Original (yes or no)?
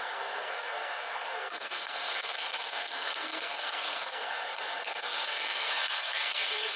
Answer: no